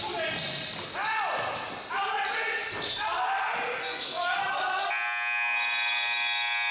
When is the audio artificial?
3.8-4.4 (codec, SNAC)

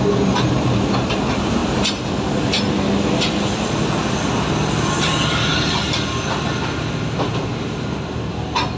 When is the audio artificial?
none

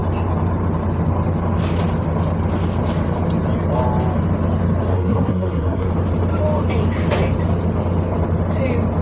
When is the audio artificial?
4.9-5.9 (codec, SNAC)

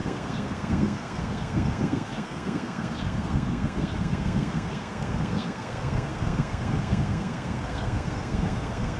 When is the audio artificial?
0.0-9.0 (codec, SNAC)

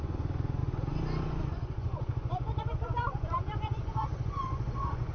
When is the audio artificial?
0.0-5.1 (vocoder, Vocos)

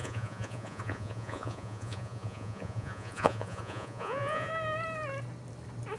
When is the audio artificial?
0.0-4.5 (vocoder, Vocos)